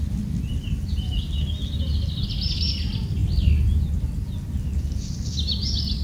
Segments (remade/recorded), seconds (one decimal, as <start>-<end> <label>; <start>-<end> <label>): 0.0-6.0 recorded